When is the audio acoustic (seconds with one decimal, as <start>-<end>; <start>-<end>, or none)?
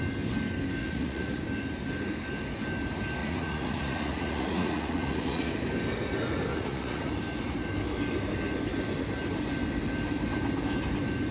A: 0.0-0.8; 1.4-3.2; 5.5-6.5; 7.1-11.3